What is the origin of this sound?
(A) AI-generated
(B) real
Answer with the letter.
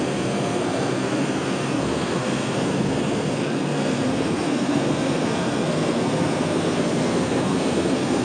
A